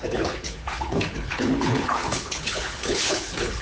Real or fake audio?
fake